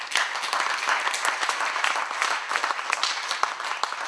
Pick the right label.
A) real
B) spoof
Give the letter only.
A